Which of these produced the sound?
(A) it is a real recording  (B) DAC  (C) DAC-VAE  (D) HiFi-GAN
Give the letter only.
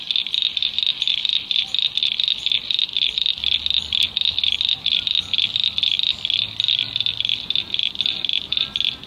A